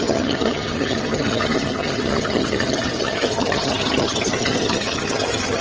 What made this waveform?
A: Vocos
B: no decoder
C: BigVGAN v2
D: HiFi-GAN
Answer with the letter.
D